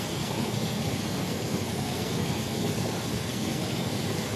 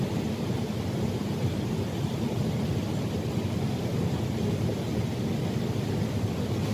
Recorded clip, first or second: second